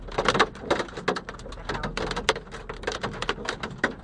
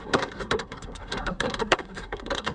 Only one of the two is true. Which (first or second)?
first